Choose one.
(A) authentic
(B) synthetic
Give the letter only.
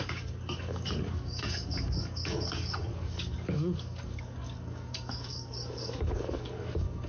B